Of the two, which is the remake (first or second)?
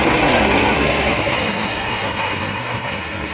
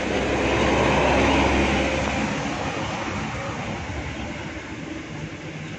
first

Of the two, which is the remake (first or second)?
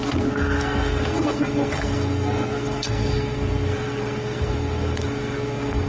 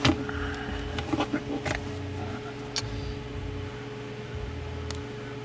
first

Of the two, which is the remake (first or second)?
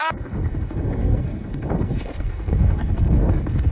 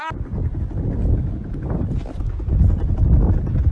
first